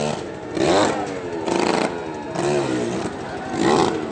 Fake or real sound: real